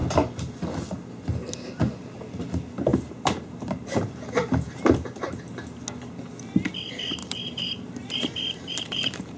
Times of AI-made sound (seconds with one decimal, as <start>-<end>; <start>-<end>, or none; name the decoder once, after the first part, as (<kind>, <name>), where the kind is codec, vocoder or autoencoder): 2.9-5.3 (vocoder, BigVGAN v2); 7.2-9.4